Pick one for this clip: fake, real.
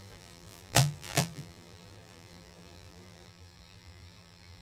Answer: fake